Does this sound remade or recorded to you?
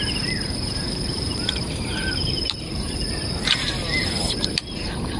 remade